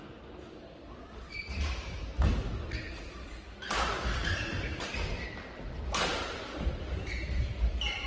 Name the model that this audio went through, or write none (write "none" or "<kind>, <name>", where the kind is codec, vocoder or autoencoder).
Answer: none